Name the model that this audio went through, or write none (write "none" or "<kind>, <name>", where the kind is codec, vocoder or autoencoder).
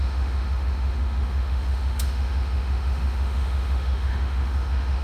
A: autoencoder, DAC-VAE